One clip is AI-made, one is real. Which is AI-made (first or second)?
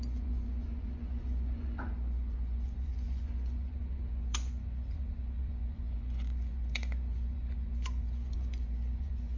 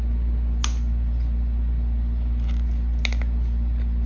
first